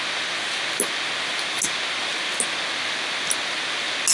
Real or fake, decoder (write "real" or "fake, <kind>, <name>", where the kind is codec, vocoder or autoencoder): real